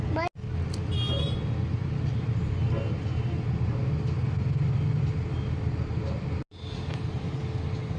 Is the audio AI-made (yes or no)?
no